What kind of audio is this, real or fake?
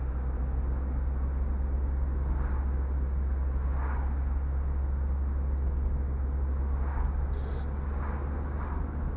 real